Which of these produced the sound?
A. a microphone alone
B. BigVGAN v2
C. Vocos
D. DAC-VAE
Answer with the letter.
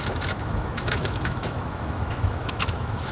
D